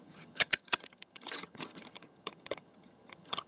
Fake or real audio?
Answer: fake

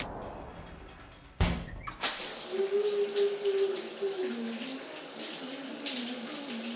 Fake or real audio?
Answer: real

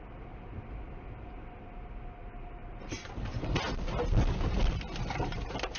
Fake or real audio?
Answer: real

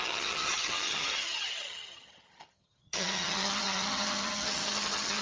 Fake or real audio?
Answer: fake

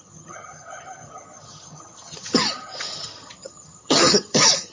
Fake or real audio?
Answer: fake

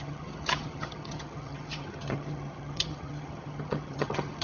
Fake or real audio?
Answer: fake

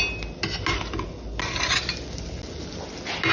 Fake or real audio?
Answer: real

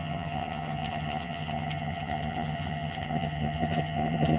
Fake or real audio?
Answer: fake